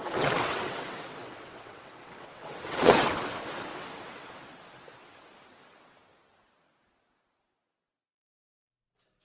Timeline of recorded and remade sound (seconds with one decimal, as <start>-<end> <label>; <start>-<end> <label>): 0.0-3.1 remade; 3.1-3.7 recorded; 3.7-4.3 remade; 4.3-9.2 recorded